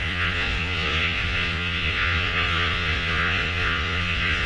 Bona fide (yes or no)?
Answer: no